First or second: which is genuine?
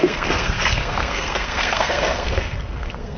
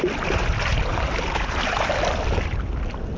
second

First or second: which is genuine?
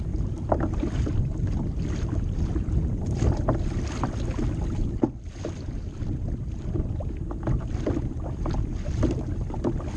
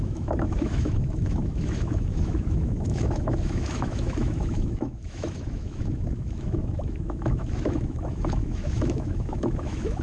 first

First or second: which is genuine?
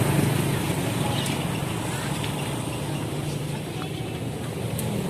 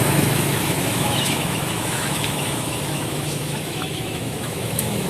first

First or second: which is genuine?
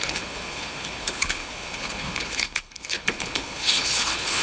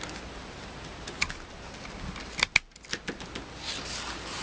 second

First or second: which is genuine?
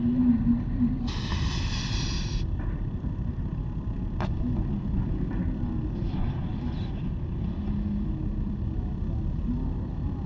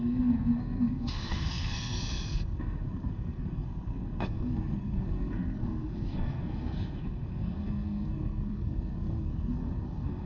first